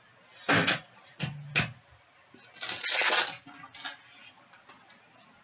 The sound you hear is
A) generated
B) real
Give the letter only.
B